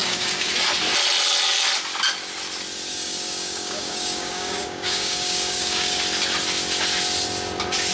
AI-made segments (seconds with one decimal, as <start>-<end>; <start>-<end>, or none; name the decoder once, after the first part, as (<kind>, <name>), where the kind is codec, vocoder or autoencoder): 0.0-0.5 (codec, DAC); 2.9-6.0